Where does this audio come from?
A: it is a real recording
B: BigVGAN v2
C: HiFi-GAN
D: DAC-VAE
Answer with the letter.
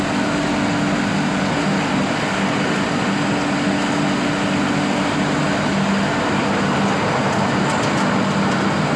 A